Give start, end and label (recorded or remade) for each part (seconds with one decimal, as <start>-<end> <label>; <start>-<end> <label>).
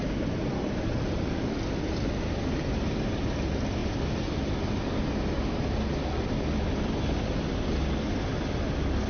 0.0-9.1 recorded